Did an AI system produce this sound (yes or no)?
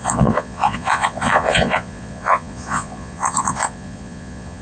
yes